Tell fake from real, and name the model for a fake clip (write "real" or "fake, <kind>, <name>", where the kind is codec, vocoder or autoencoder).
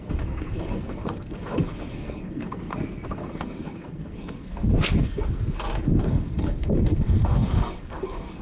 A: fake, codec, SNAC